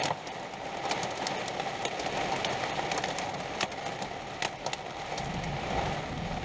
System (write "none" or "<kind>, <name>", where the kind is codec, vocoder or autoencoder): none